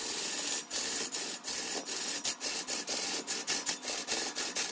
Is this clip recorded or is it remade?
recorded